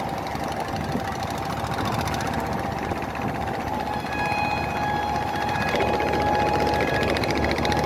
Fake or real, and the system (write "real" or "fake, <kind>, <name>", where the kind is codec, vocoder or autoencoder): real